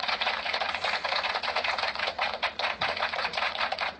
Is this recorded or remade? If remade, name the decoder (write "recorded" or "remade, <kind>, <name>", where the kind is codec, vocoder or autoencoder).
remade, vocoder, Vocos